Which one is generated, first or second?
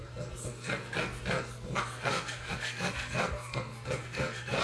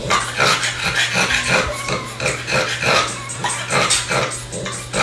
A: first